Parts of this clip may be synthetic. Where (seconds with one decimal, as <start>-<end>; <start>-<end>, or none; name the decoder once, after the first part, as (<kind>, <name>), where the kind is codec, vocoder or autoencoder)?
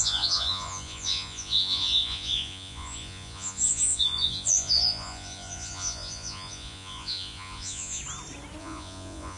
0.0-8.0 (vocoder, Vocos); 8.6-9.4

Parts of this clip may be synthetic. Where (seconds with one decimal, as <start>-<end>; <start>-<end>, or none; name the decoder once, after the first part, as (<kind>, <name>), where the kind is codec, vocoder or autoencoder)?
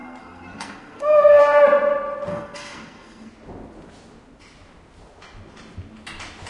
0.0-1.4 (codec, SNAC); 2.3-3.3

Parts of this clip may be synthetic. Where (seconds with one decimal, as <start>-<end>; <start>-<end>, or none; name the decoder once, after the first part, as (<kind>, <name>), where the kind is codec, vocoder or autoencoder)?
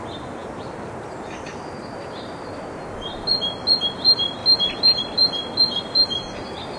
none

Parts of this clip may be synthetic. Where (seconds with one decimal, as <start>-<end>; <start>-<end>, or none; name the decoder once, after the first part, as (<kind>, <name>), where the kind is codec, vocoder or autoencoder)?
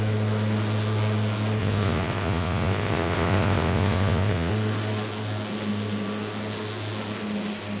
1.6-4.5 (vocoder, Vocos)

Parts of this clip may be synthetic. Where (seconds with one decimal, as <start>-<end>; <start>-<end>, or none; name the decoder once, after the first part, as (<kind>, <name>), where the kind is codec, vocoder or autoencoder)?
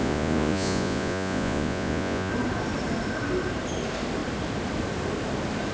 0.0-2.3 (vocoder, Vocos)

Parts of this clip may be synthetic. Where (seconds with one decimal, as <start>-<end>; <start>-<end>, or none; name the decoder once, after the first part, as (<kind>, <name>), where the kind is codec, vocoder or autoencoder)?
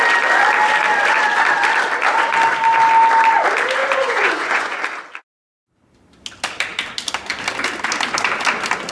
3.8-4.8 (vocoder, Vocos)